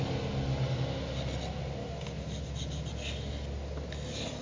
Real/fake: real